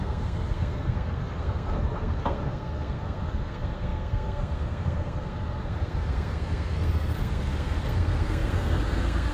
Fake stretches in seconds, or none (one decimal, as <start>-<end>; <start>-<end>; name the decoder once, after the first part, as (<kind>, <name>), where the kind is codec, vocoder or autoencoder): 0.0-9.3 (codec, SNAC)